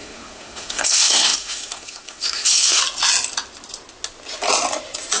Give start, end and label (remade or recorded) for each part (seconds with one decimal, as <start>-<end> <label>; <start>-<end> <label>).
0.0-2.8 remade; 2.8-5.2 recorded

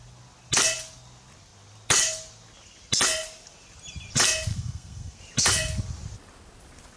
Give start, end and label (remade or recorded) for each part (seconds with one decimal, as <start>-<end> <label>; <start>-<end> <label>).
0.0-4.5 recorded; 4.5-5.2 remade; 5.2-7.0 recorded

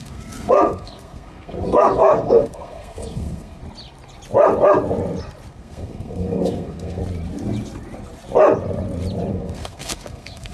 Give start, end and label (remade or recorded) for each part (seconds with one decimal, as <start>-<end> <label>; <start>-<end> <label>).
0.0-3.6 remade; 3.6-5.5 recorded; 5.5-7.0 remade; 7.0-9.3 recorded; 9.3-10.5 remade

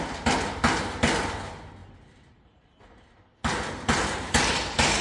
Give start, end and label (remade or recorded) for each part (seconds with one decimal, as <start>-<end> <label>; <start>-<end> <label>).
0.0-5.0 recorded

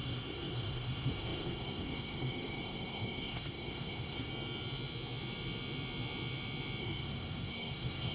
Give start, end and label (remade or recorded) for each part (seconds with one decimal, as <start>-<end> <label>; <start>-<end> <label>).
0.0-4.3 remade; 4.3-6.8 recorded; 6.8-8.1 remade

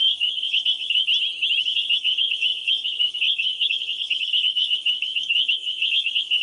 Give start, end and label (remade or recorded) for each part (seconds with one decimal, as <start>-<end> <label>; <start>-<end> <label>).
0.0-1.1 remade; 1.1-1.6 recorded; 1.6-6.4 remade

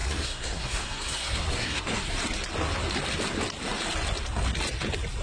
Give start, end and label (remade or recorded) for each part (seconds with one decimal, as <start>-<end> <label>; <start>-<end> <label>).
0.0-2.1 remade; 2.1-5.2 recorded